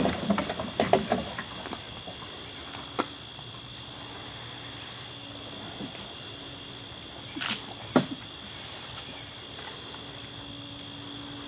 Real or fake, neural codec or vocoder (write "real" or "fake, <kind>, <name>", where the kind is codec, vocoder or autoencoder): real